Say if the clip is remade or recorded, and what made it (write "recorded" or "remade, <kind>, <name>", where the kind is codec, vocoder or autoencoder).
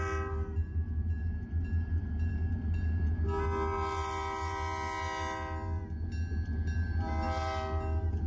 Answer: recorded